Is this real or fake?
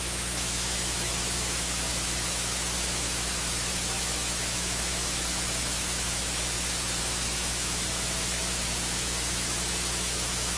fake